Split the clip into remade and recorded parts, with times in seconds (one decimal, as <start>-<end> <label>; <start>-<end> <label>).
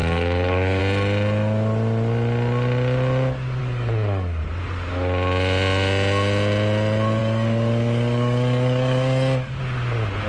0.0-0.8 remade; 0.8-3.6 recorded; 3.6-4.4 remade; 4.4-7.2 recorded; 7.2-9.6 remade; 9.6-10.3 recorded